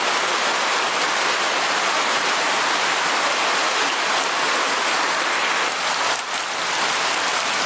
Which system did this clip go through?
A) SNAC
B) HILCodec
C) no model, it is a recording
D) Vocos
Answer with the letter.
C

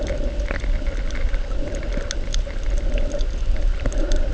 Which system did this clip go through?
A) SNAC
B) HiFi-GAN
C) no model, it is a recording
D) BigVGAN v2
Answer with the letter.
C